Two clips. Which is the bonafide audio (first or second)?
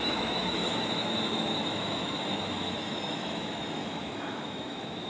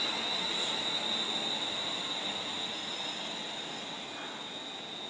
second